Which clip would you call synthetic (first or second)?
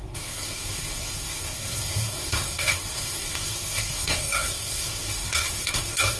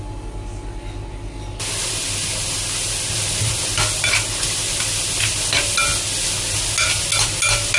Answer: first